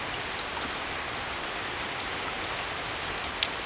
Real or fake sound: real